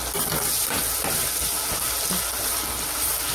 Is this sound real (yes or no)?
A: yes